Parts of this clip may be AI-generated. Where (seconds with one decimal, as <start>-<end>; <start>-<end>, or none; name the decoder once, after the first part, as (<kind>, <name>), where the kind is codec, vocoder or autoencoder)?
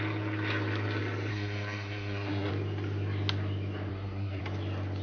1.3-2.5 (codec, SNAC); 3.9-4.4